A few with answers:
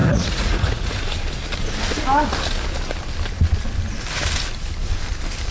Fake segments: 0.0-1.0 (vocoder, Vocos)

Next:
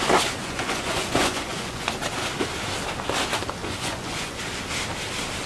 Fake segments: 0.4-1.9 (vocoder, Vocos); 3.6-4.6

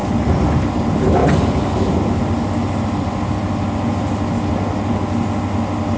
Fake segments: 1.2-1.8 (vocoder, BigVGAN v2)

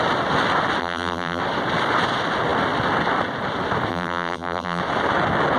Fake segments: 0.8-1.4 (vocoder, BigVGAN v2); 3.9-4.8

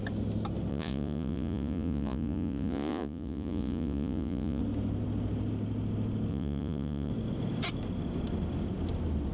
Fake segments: 0.7-4.6 (vocoder, Vocos); 6.3-7.1